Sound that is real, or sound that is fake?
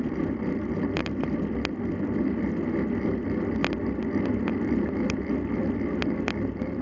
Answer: real